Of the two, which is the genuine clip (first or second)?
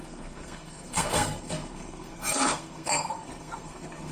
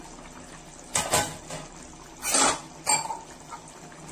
second